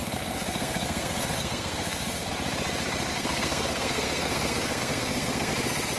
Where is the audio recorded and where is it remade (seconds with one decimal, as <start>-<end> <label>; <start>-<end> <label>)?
0.0-2.3 remade; 2.3-3.1 recorded; 3.1-5.5 remade; 5.5-6.0 recorded